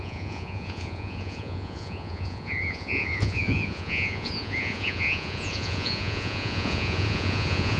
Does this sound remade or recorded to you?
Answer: remade